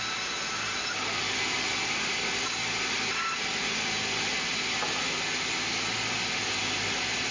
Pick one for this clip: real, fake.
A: real